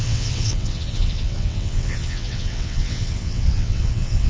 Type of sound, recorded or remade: remade